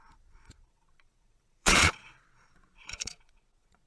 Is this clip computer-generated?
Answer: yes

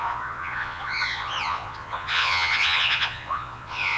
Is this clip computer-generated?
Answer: yes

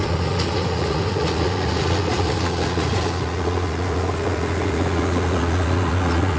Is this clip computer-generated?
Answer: yes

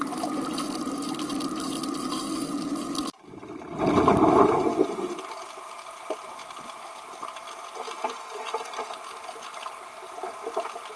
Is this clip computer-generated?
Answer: no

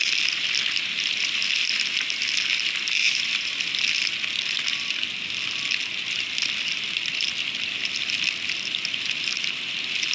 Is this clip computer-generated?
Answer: no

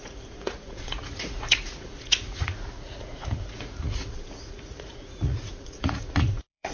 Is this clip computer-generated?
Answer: yes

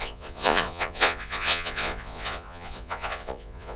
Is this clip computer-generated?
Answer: yes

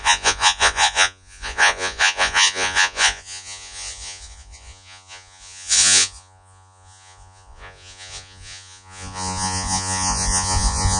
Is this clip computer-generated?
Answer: yes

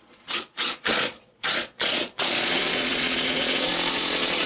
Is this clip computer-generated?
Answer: yes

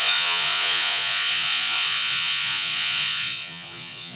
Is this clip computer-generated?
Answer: yes